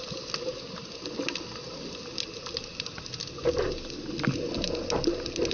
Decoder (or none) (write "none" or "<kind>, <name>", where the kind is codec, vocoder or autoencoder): none